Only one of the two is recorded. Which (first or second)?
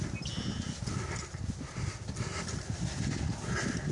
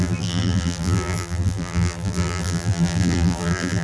first